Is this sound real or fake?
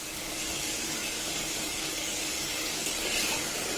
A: fake